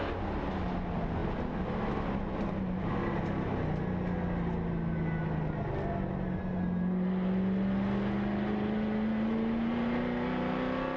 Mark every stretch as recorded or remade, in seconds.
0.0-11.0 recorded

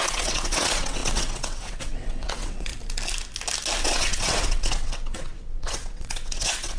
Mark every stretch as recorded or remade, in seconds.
0.0-2.7 remade; 2.7-3.8 recorded; 3.8-6.8 remade

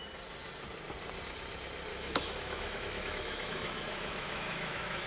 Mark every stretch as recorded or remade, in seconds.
0.0-1.9 recorded; 1.9-5.1 remade